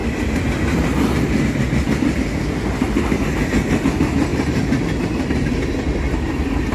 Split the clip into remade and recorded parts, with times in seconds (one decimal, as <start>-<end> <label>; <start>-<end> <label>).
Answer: 0.0-6.7 recorded